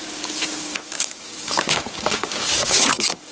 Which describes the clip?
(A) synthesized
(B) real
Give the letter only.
A